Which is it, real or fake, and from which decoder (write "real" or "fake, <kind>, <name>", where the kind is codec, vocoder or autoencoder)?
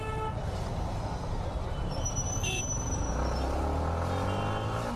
real